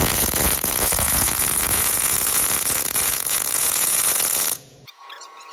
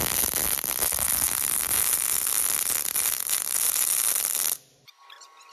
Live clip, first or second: second